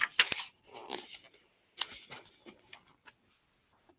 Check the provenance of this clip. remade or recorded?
recorded